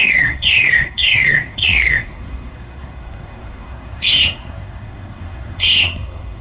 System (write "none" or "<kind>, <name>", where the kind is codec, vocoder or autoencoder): codec, SNAC